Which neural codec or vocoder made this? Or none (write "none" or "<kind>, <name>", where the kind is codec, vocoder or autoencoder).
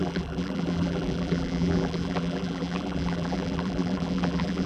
vocoder, BigVGAN v2